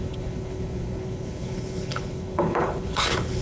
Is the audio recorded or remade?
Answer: remade